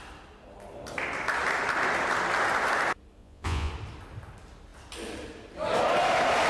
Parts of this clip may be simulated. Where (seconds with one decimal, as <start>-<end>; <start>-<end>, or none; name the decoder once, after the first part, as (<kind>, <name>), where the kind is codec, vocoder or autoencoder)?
3.2-3.7 (vocoder, Vocos)

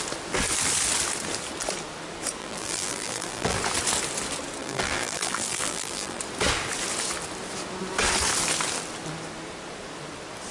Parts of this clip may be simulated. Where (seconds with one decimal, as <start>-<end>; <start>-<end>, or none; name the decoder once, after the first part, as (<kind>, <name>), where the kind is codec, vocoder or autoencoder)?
2.4-3.6 (vocoder, BigVGAN v2); 4.6-6.2